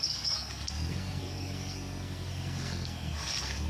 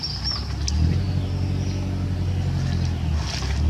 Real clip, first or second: second